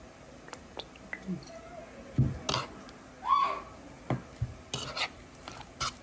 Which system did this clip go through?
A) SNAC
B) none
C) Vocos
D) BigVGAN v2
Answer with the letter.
B